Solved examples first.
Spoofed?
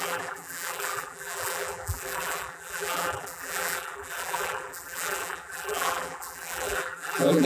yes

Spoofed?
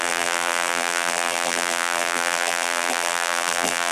yes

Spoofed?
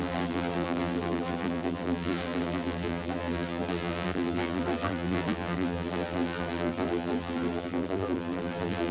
yes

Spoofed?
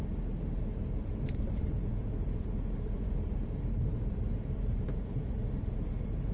yes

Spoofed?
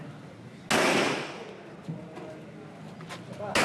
no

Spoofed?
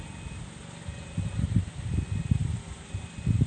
no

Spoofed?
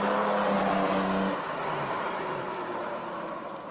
no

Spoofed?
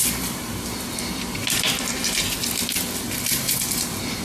no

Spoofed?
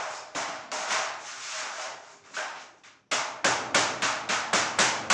no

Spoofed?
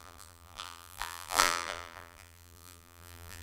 yes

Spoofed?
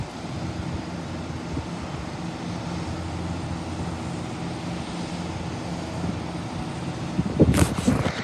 no